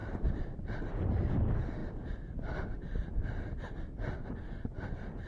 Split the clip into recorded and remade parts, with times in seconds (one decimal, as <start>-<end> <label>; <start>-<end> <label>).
0.0-1.8 remade; 1.8-5.3 recorded